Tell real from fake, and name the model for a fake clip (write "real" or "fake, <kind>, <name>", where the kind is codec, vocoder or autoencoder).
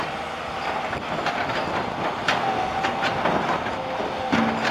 real